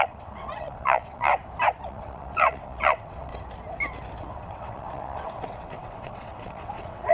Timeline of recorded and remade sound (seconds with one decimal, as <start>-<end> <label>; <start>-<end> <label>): 0.0-1.3 remade; 1.3-1.8 recorded; 1.8-3.3 remade; 3.3-4.2 recorded; 4.2-7.1 remade